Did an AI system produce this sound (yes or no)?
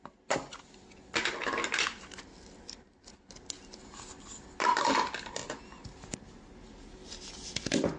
no